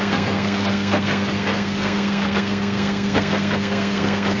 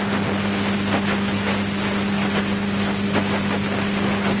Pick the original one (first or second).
second